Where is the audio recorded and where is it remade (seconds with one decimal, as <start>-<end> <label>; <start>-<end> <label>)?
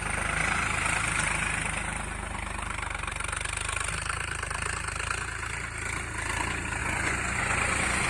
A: 0.0-6.8 recorded; 6.8-8.1 remade